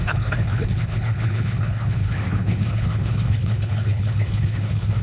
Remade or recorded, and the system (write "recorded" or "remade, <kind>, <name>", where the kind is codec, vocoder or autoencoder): remade, codec, HILCodec